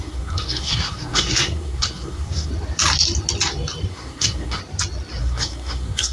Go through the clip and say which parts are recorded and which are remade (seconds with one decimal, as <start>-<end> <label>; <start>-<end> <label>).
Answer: 0.0-2.5 remade; 2.5-3.9 recorded; 3.9-4.6 remade; 4.6-5.2 recorded; 5.2-6.1 remade